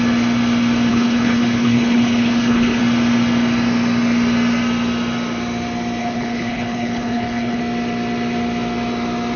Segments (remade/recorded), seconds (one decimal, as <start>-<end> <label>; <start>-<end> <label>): 0.0-0.9 recorded; 0.9-2.8 remade; 2.8-6.0 recorded; 6.0-7.6 remade; 7.6-9.4 recorded